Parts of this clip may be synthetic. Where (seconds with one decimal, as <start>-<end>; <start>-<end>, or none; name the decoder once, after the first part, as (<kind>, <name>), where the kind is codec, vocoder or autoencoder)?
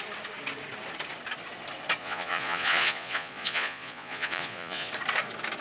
2.0-4.9 (vocoder, Vocos)